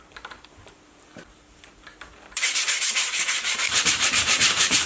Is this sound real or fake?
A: fake